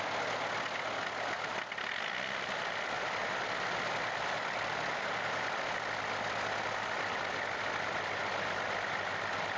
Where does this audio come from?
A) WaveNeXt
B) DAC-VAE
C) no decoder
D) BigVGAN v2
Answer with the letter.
C